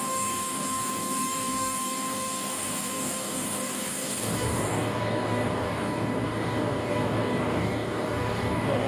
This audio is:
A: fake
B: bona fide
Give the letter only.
A